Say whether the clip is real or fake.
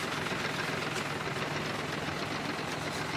real